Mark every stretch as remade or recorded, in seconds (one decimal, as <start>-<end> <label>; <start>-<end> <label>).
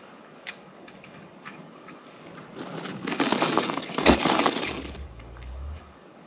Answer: 0.0-2.3 remade; 2.3-2.9 recorded; 2.9-6.3 remade